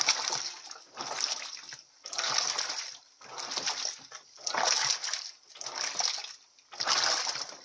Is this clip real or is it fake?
real